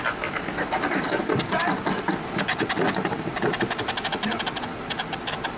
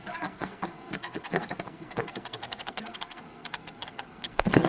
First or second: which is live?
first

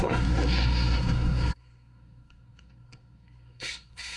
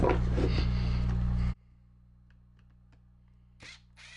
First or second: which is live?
second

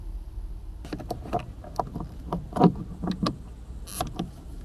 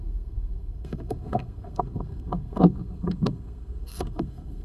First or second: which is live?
first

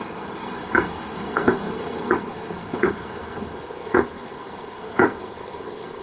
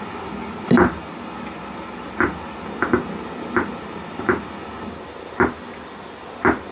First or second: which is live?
second